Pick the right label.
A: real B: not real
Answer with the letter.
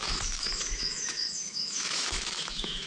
B